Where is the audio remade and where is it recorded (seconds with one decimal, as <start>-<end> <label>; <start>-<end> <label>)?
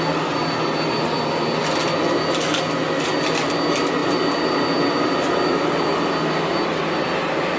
0.0-7.6 recorded